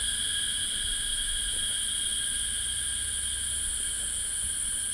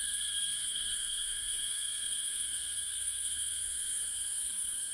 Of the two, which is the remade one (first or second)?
second